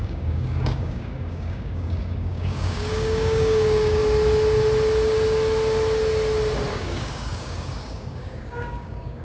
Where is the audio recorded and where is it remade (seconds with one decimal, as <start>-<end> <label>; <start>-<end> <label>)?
0.0-4.0 remade; 4.0-6.7 recorded; 6.7-9.2 remade